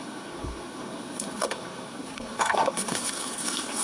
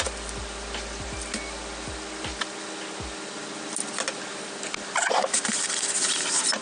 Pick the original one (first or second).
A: second